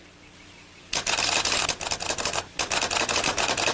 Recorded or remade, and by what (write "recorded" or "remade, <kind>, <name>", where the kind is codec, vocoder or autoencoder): recorded